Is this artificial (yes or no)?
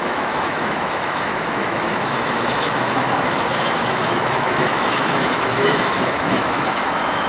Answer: yes